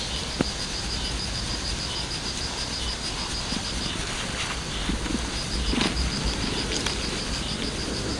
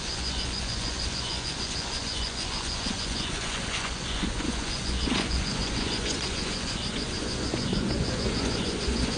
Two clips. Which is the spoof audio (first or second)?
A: second